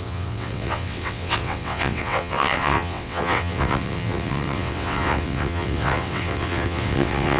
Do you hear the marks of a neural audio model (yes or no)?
yes